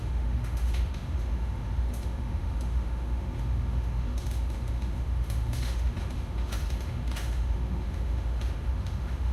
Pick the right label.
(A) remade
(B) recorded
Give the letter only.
A